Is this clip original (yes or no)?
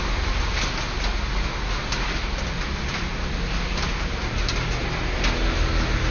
yes